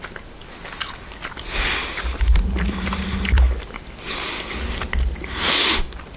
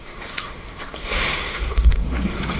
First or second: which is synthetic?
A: second